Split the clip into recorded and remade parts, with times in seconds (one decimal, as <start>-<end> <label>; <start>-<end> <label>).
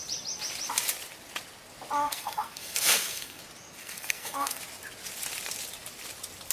0.0-2.0 recorded; 2.0-3.4 remade; 3.4-3.8 recorded; 3.8-4.6 remade; 4.6-6.5 recorded